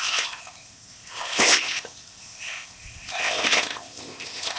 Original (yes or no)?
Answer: no